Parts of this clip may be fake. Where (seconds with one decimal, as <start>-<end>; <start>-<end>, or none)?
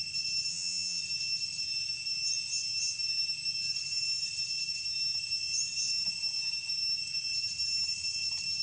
0.5-1.0